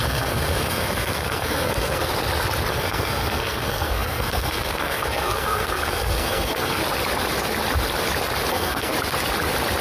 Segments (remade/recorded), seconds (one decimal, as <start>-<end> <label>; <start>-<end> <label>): 0.0-2.1 remade; 2.1-2.7 recorded; 2.7-6.8 remade; 6.8-8.5 recorded; 8.5-8.9 remade; 8.9-9.8 recorded